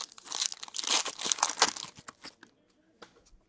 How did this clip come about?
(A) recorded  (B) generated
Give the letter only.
A